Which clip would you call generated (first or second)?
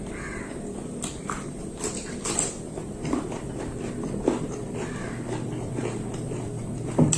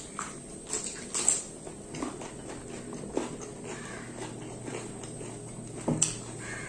first